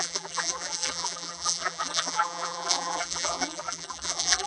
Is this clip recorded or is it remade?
remade